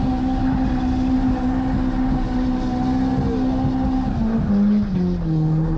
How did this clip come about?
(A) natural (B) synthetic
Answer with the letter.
A